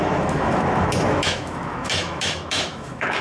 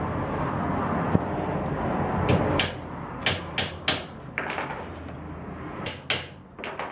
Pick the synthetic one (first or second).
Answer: first